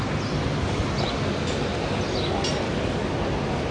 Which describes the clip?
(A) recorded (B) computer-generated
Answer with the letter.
A